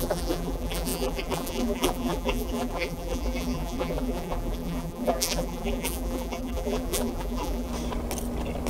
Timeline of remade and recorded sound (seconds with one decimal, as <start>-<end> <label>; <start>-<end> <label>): 0.0-7.7 remade; 7.7-8.7 recorded